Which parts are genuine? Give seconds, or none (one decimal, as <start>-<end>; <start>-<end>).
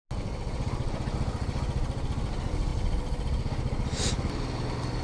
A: 0.0-5.0